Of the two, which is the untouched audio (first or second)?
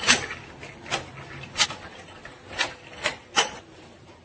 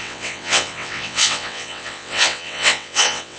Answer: first